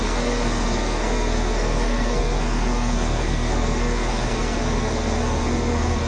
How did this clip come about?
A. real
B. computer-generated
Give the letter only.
B